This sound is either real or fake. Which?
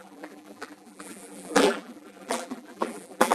fake